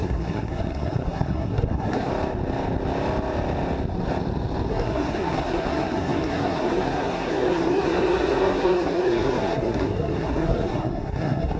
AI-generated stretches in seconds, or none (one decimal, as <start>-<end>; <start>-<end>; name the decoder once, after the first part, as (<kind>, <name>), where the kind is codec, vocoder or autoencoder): 0.0-2.1 (codec, SNAC); 4.7-11.6